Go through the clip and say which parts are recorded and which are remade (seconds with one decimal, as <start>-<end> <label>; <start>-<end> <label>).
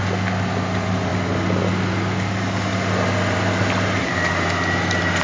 0.0-5.2 recorded